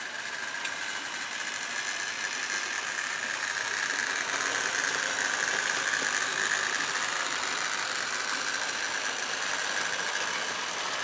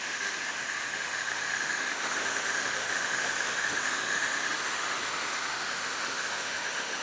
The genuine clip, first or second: first